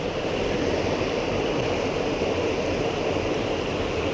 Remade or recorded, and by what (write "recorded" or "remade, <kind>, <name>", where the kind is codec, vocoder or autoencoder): recorded